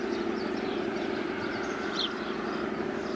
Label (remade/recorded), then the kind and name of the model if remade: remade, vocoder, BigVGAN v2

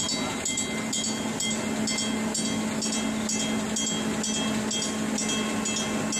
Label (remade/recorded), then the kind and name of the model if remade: recorded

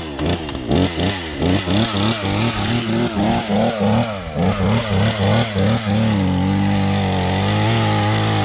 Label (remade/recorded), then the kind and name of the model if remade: recorded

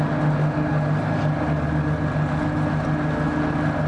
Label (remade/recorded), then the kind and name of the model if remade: recorded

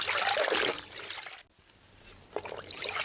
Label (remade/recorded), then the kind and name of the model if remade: recorded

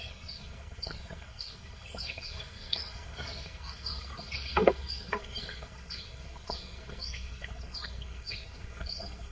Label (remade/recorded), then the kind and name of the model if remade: remade, codec, SNAC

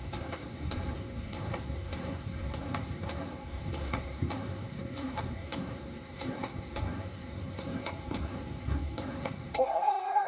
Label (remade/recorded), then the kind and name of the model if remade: remade, codec, SNAC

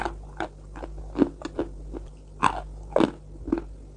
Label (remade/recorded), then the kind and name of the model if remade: recorded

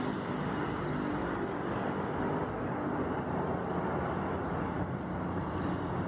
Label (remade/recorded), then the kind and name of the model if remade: recorded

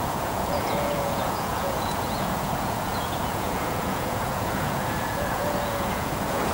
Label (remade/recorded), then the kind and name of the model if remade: remade, vocoder, Vocos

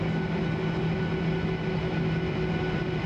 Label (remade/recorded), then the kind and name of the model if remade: recorded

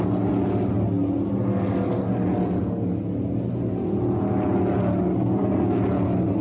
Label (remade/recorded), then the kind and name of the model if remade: recorded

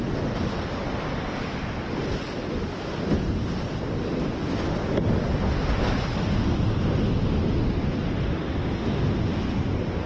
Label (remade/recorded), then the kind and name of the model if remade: recorded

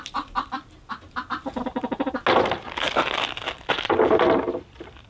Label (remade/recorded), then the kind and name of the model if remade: recorded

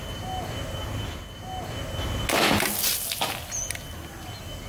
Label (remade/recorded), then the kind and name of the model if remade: recorded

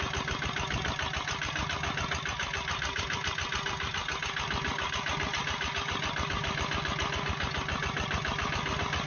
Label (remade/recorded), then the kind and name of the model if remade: recorded